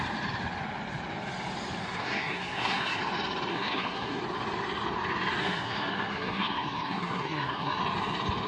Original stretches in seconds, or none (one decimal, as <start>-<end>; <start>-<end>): 0.0-1.8; 3.0-3.5; 4.2-5.4; 7.8-8.5